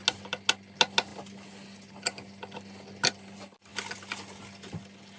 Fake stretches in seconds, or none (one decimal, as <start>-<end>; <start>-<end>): none